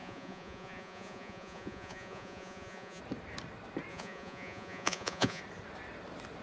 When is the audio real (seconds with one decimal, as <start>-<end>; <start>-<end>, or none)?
3.0-3.9; 5.4-6.4